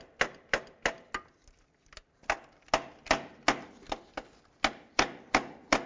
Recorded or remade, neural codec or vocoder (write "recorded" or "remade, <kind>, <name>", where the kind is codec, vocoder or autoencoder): recorded